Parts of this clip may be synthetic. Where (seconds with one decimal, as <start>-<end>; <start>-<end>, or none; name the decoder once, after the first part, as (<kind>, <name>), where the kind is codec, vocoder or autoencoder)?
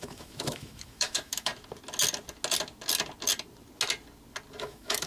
0.0-1.5 (autoencoder, DAC-VAE); 4.6-5.1